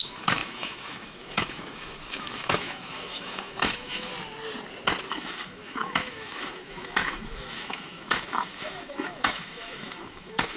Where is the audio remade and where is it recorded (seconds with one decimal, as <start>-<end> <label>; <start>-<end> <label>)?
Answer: 0.0-4.1 remade; 4.1-5.1 recorded; 5.1-10.6 remade